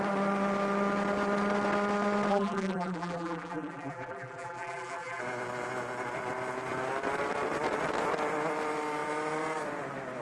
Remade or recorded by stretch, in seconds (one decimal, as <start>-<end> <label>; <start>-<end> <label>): 0.0-2.3 recorded; 2.3-5.2 remade; 5.2-10.2 recorded